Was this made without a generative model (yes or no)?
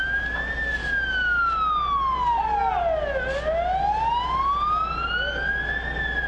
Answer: yes